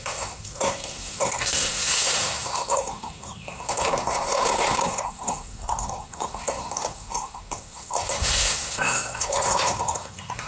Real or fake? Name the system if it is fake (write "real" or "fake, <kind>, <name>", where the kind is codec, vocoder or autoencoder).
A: fake, codec, SNAC